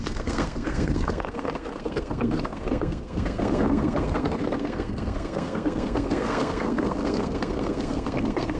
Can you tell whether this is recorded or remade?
remade